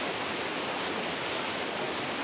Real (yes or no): yes